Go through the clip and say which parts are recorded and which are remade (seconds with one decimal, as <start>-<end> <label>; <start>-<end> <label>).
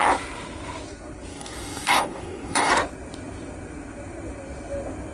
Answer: 0.0-1.3 recorded; 1.3-2.7 remade; 2.7-5.1 recorded